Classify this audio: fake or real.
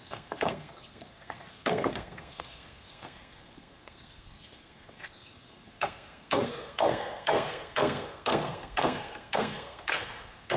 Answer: fake